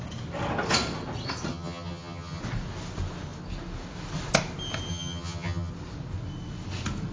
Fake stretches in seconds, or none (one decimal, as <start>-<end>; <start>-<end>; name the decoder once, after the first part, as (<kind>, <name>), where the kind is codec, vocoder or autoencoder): 1.5-2.4 (vocoder, HiFi-GAN); 4.9-5.7